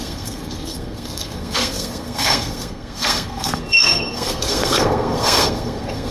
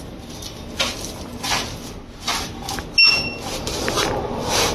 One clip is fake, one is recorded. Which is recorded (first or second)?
second